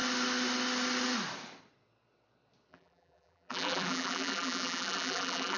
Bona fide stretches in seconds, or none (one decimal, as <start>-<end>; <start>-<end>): 0.0-2.7